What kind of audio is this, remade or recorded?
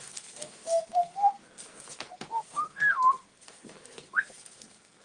remade